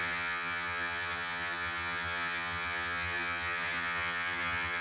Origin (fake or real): fake